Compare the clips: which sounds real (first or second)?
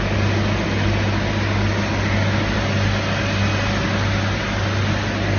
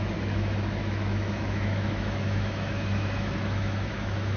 first